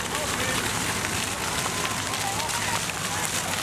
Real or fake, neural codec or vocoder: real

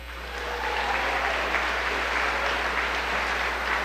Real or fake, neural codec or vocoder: real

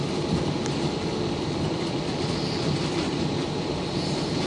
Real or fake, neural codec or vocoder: real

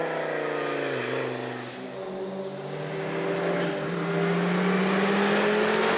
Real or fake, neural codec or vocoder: real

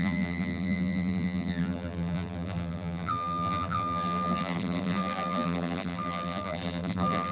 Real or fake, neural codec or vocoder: fake, vocoder, BigVGAN v2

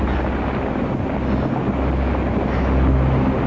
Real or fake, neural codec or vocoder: real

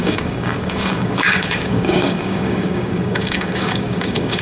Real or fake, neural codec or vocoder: fake, codec, DAC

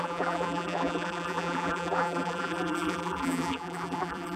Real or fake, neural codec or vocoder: fake, vocoder, BigVGAN v2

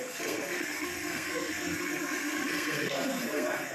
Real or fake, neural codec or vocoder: fake, codec, SNAC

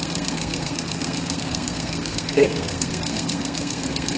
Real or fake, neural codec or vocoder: fake, codec, SNAC